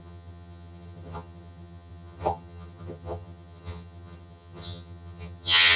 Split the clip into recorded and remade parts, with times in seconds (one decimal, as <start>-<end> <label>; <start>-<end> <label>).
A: 0.0-5.8 remade